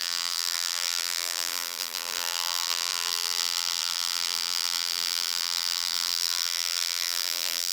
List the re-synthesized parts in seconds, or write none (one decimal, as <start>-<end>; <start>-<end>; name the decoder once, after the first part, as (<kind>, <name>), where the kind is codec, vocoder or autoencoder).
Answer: 0.0-7.7 (vocoder, BigVGAN v2)